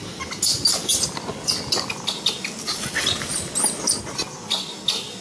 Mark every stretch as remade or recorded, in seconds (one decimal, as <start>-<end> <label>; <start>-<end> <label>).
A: 0.0-5.2 recorded